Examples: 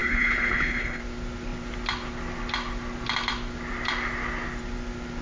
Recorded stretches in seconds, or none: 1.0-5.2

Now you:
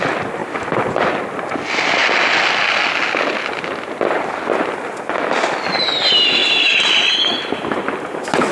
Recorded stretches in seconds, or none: 0.0-8.5

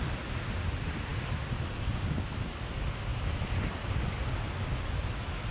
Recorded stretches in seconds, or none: 0.0-5.5

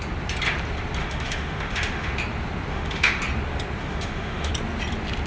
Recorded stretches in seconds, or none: 0.0-1.0; 2.1-2.7; 3.2-3.8; 4.5-5.3